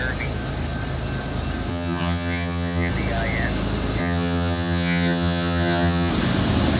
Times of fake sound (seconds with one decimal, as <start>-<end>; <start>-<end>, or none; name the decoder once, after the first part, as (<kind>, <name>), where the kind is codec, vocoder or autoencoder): 1.7-2.9 (vocoder, HiFi-GAN); 4.0-6.1